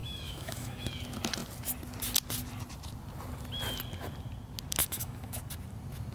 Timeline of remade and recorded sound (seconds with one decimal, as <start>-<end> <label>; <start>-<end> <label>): 0.0-0.9 remade; 0.9-4.8 recorded; 4.8-5.4 remade; 5.4-6.1 recorded